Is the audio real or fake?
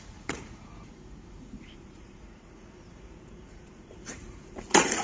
fake